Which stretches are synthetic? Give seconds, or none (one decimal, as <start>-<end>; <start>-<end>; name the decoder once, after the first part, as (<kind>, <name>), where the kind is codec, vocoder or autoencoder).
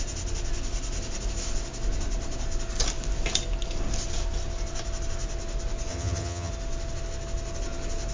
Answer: 5.9-6.5 (vocoder, HiFi-GAN)